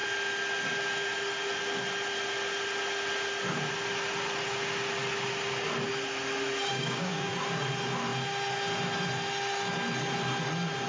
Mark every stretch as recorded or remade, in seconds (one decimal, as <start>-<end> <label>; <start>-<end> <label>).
0.0-6.7 recorded; 6.7-7.3 remade; 7.3-10.9 recorded